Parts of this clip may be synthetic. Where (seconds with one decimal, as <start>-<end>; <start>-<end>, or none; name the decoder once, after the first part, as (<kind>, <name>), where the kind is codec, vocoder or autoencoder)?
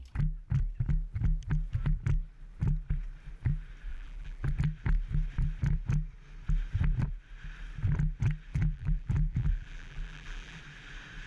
3.9-4.5 (vocoder, BigVGAN v2); 8.5-10.6